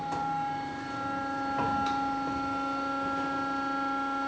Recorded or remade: recorded